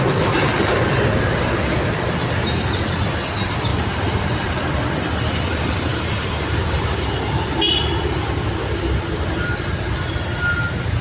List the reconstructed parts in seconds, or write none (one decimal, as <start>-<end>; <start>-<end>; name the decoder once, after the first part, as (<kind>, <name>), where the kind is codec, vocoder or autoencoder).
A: 3.7-4.7 (vocoder, BigVGAN v2); 5.9-6.8